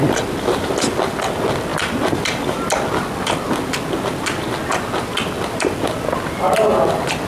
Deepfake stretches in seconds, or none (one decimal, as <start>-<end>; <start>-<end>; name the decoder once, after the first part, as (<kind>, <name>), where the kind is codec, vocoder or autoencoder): none